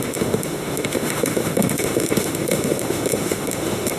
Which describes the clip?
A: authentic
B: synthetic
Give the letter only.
B